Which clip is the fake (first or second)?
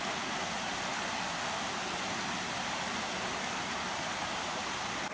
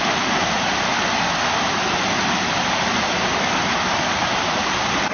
second